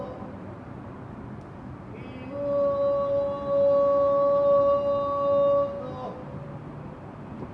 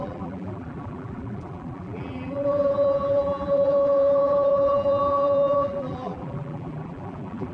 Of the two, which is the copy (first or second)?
second